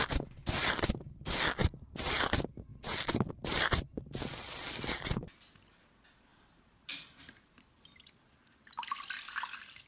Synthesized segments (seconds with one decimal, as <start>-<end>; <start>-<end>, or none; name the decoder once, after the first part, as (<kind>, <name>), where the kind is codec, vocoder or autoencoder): 1.6-2.2 (vocoder, BigVGAN v2); 2.7-3.3